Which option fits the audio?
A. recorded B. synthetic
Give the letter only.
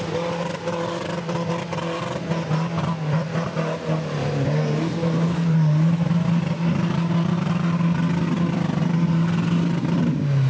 A